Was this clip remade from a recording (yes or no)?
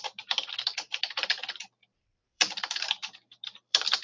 yes